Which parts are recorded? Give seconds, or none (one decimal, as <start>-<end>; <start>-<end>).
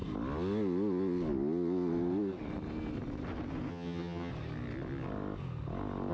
0.0-3.7; 4.3-6.1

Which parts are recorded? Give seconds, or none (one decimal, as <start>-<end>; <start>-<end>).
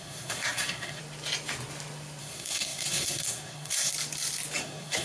1.0-2.2; 3.9-4.6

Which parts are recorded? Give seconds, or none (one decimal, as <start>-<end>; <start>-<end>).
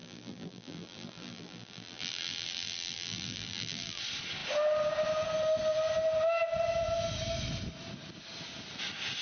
4.0-9.2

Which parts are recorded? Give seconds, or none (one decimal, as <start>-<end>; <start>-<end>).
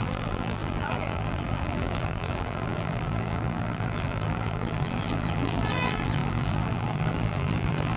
none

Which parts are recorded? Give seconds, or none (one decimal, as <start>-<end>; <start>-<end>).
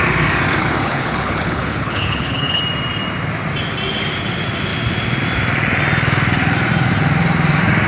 0.0-0.6; 2.6-7.9